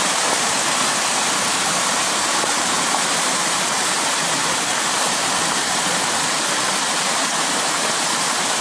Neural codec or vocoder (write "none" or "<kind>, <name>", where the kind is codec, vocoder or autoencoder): vocoder, BigVGAN v2